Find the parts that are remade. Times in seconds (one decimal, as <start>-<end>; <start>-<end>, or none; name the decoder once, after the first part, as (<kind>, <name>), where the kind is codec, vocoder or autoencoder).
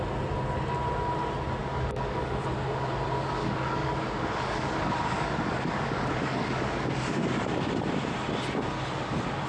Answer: 1.6-2.3 (codec, DAC); 3.4-7.7